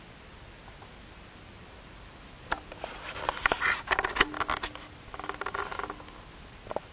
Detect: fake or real real